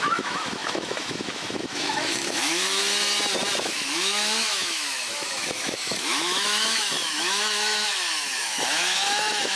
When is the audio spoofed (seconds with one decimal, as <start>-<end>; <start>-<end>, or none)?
0.0-2.8; 3.6-9.6